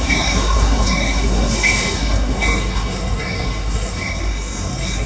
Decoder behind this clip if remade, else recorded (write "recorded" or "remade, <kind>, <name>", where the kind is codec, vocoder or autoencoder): remade, codec, SNAC